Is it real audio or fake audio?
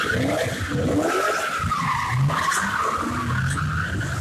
real